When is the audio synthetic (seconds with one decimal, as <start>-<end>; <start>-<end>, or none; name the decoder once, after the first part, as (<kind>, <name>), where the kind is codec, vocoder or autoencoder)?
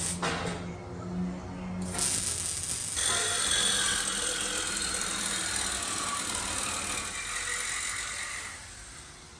none